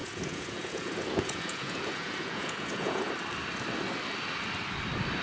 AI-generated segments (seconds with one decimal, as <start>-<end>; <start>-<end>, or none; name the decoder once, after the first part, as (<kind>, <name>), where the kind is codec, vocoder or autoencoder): 0.0-3.1 (vocoder, Vocos)